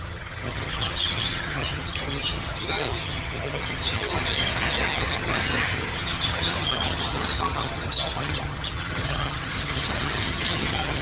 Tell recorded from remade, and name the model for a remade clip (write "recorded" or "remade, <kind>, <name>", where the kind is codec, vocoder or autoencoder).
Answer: remade, vocoder, HiFi-GAN